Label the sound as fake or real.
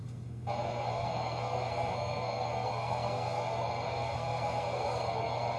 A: fake